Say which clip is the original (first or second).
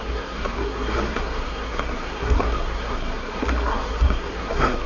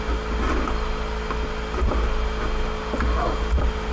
second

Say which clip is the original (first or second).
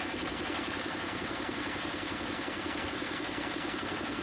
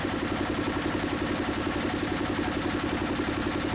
second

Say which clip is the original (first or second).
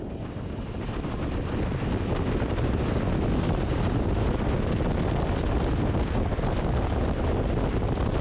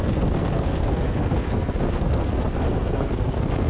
first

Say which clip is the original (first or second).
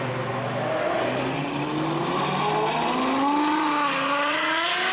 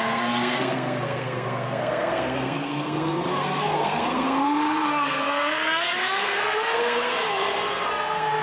first